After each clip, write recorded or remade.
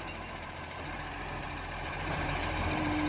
remade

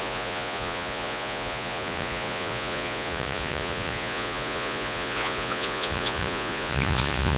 remade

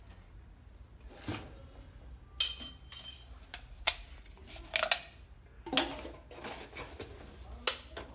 recorded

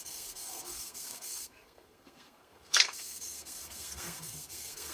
remade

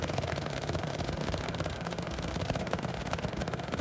remade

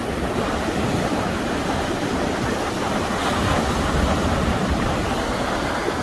remade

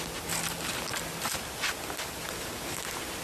recorded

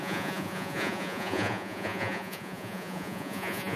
remade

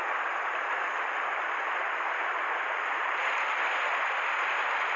recorded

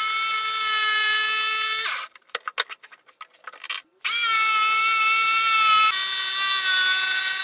recorded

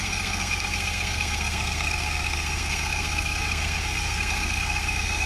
remade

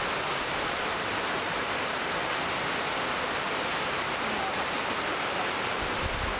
recorded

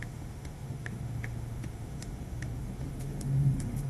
remade